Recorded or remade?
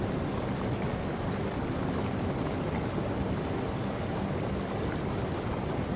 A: recorded